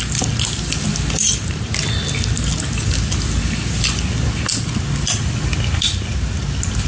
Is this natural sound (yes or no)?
yes